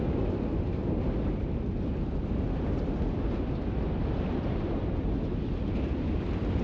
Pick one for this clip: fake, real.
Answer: real